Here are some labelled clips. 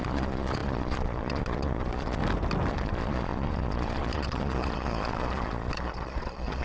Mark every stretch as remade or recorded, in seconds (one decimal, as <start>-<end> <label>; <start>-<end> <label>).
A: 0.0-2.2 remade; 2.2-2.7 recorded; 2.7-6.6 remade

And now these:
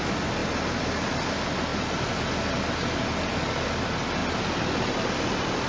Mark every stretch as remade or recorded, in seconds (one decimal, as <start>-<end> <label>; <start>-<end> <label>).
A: 0.0-5.7 recorded

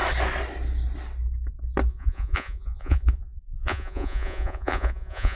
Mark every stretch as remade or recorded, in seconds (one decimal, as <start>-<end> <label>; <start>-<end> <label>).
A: 0.0-1.9 recorded; 1.9-5.4 remade